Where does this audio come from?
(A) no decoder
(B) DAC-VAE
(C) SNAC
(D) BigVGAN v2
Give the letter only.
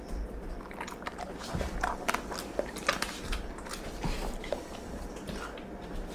A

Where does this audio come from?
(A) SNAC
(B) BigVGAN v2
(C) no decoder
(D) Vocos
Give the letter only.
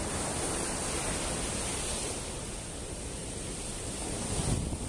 C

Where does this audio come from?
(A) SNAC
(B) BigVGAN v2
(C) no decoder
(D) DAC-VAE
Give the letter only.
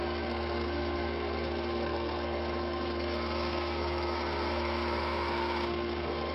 A